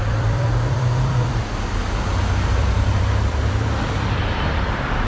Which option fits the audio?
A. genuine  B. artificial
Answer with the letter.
B